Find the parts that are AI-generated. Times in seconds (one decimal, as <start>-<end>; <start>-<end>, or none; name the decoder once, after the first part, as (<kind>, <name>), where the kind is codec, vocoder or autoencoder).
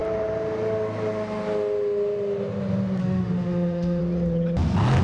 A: 3.0-4.0 (autoencoder, DAC-VAE)